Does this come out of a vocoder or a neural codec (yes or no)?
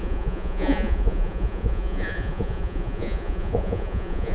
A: yes